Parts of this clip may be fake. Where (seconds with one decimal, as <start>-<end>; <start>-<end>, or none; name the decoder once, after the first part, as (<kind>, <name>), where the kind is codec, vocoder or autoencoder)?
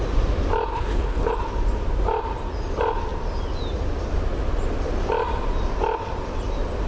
0.7-1.3 (codec, HILCodec)